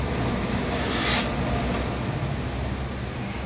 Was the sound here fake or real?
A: real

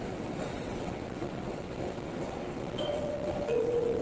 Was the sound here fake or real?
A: fake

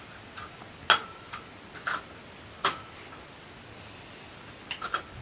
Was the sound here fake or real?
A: real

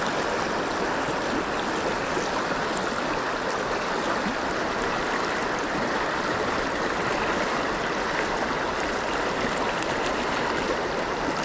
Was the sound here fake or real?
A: real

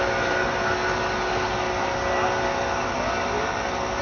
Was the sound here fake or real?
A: real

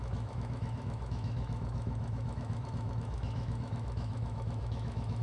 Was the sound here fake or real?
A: fake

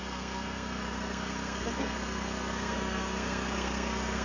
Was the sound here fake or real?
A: fake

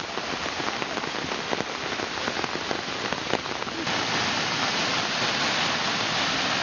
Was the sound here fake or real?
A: real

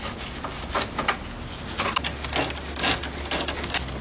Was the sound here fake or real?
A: real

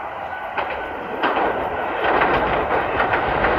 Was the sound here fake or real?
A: fake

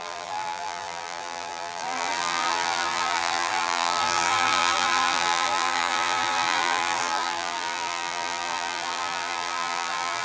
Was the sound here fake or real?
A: fake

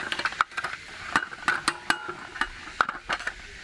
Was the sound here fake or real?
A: real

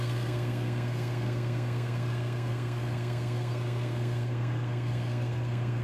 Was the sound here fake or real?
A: fake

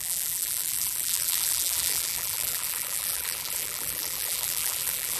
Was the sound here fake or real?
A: fake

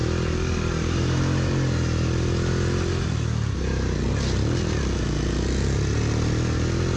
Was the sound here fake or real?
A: real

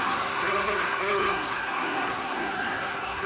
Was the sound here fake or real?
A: fake